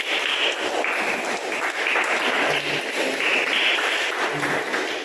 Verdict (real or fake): real